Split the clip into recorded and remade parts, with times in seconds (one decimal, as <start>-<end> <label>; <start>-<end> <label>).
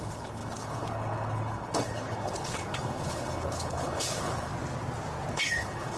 0.0-4.5 remade; 4.5-5.3 recorded; 5.3-6.0 remade